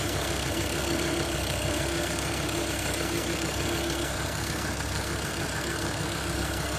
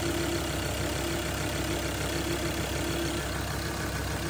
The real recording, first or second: second